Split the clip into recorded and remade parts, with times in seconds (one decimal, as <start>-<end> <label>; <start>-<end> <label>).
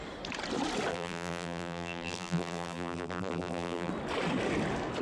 0.0-0.9 recorded; 0.9-3.9 remade; 3.9-5.0 recorded